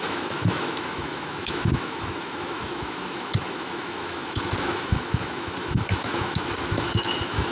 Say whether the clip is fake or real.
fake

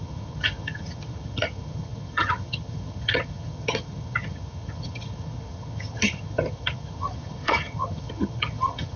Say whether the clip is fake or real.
fake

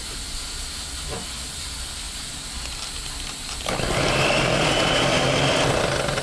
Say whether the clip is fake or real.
real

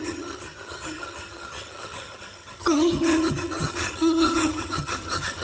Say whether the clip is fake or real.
fake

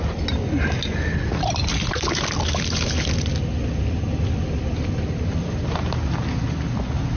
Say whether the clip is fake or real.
real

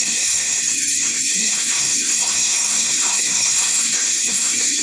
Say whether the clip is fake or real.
fake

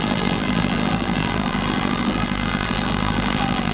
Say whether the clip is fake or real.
fake